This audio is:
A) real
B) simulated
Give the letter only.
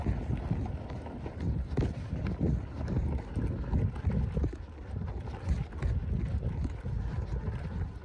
A